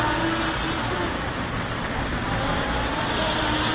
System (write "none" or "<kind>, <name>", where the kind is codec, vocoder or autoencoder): none